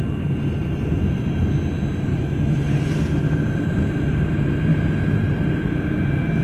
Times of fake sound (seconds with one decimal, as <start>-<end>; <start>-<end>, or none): 0.6-1.5; 2.1-2.8; 4.7-5.6